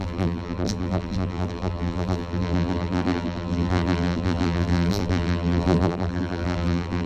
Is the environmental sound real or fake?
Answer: fake